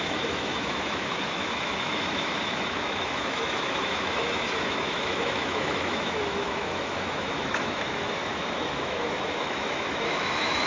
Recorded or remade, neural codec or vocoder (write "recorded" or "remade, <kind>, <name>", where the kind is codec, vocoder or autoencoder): remade, autoencoder, DAC-VAE